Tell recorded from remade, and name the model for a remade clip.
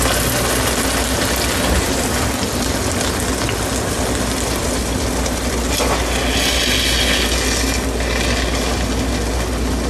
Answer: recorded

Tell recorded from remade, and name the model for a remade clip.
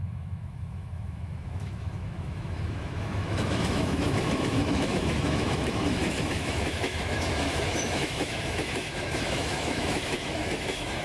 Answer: remade, autoencoder, DAC-VAE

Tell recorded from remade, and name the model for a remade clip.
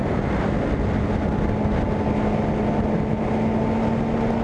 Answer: recorded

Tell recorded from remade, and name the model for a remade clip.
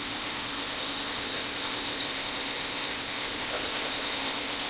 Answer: remade, codec, ZipCodec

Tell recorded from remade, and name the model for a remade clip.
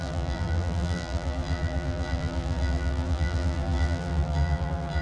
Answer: remade, vocoder, BigVGAN v2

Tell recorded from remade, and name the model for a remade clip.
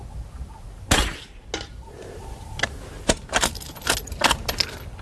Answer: recorded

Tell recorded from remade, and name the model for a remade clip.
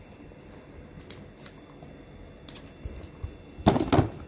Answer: recorded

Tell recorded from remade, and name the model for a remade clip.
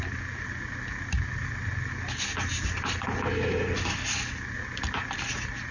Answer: recorded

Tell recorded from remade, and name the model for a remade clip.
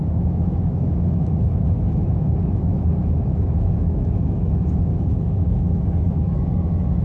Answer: remade, autoencoder, DAC-VAE